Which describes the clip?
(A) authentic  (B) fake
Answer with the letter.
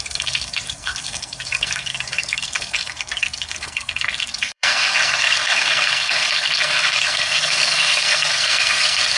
B